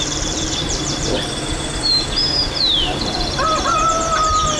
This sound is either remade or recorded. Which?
remade